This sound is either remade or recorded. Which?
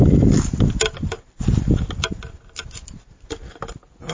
recorded